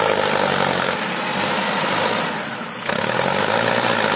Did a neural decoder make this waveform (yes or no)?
no